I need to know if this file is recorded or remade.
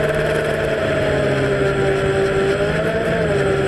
recorded